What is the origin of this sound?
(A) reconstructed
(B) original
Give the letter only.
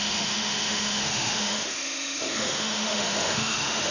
A